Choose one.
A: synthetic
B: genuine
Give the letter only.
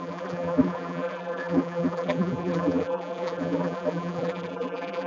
A